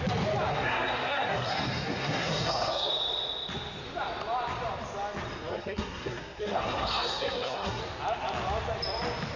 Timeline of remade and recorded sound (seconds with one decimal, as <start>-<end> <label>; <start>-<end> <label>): 0.0-0.5 recorded; 0.5-2.9 remade; 2.9-5.5 recorded; 5.5-7.8 remade; 7.8-9.4 recorded